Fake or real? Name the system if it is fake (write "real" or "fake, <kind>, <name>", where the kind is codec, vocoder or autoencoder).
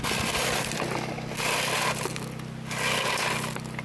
real